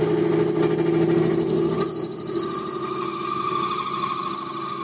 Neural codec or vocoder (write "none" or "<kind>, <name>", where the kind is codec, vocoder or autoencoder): none